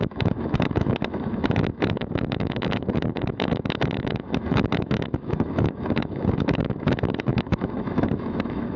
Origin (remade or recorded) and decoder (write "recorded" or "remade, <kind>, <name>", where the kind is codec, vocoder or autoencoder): remade, autoencoder, DAC-VAE